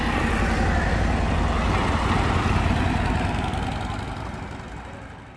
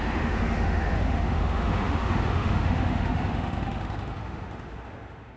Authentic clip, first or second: first